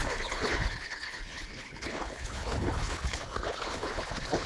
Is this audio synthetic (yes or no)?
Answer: yes